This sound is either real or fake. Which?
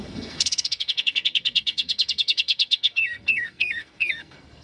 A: fake